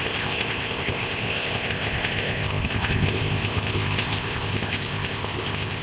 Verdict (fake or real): fake